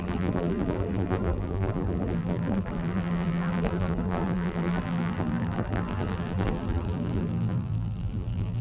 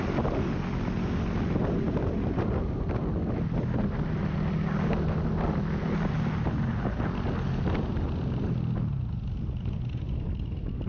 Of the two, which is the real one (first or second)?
second